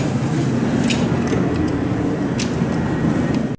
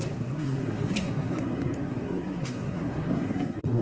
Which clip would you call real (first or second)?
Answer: first